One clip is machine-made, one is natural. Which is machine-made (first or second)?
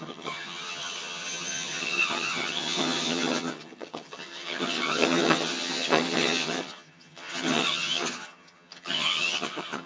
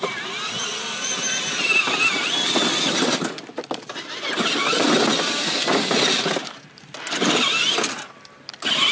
first